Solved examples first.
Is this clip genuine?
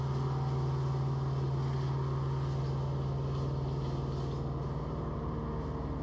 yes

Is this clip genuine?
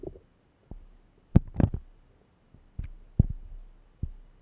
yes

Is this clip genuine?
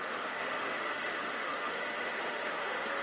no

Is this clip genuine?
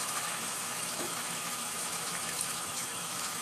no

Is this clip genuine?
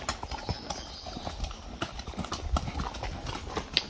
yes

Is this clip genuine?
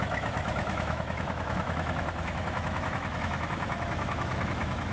no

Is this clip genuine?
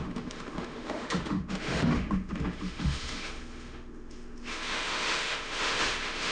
no